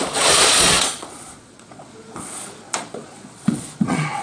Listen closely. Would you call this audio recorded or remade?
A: remade